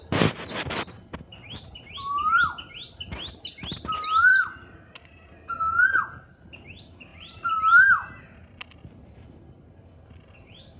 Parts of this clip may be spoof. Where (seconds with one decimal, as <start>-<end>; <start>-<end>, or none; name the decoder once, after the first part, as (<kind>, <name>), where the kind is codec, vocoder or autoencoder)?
1.3-2.4 (vocoder, BigVGAN v2); 4.3-5.3; 7.1-8.2